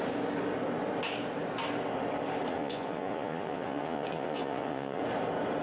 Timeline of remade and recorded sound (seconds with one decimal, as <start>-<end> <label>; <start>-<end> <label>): 0.0-2.5 recorded; 2.5-5.0 remade; 5.0-5.6 recorded